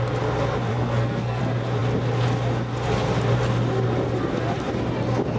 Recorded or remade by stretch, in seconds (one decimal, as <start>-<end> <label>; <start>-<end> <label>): 0.0-0.7 recorded; 0.7-1.4 remade; 1.4-5.4 recorded